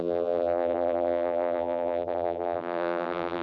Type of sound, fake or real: fake